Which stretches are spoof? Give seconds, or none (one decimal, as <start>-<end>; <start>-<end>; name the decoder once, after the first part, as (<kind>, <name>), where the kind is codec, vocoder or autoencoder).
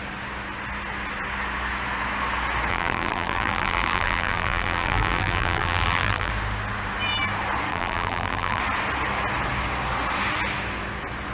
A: 2.7-6.3 (vocoder, BigVGAN v2); 7.7-8.6